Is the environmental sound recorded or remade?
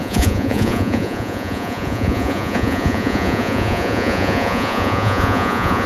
remade